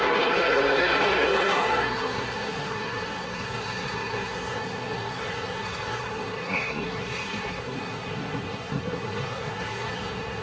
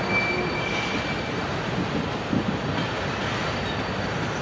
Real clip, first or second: second